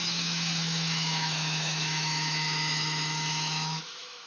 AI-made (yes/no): yes